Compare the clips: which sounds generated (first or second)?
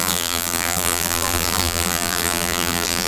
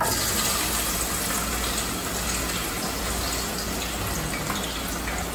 first